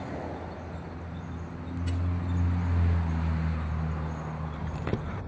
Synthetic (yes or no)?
no